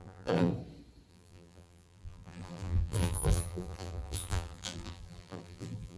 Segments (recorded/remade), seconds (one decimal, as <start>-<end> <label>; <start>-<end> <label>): 0.0-0.5 remade; 0.5-1.1 recorded; 1.1-6.0 remade